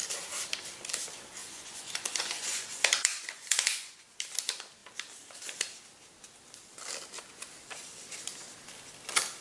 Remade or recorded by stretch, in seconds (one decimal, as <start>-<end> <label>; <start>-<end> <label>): 0.0-1.4 recorded; 1.4-4.2 remade; 4.2-9.4 recorded